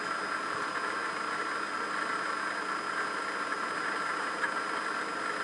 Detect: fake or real real